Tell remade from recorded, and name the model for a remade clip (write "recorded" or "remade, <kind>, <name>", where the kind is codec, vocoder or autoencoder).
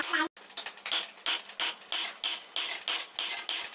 recorded